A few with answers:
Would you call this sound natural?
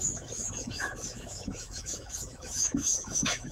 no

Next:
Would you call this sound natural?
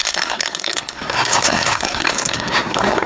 no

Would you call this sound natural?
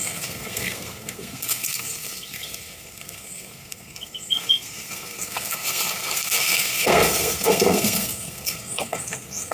no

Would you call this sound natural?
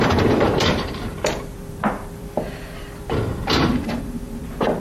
no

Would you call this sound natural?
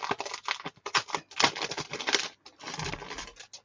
yes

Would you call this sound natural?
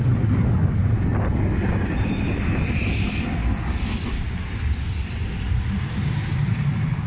yes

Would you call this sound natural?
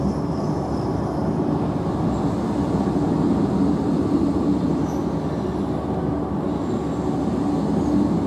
yes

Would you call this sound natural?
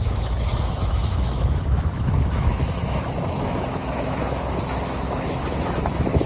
no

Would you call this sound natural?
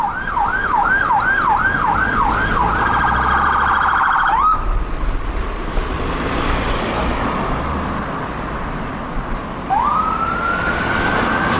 yes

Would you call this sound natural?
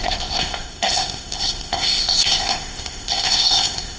no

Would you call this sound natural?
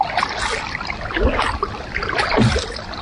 yes